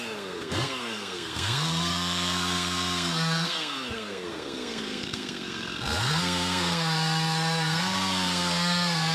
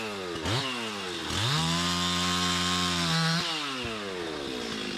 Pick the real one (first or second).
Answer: second